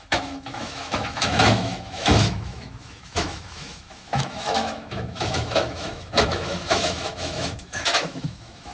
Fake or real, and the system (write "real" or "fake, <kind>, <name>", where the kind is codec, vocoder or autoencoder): fake, autoencoder, DAC-VAE